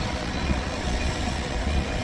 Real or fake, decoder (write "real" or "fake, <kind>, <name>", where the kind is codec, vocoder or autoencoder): fake, vocoder, Vocos